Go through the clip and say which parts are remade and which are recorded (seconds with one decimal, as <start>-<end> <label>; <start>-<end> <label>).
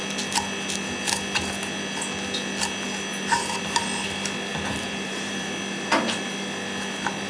0.0-3.1 recorded; 3.1-3.6 remade; 3.6-4.5 recorded; 4.5-5.5 remade; 5.5-7.3 recorded